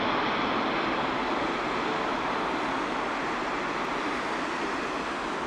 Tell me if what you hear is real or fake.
real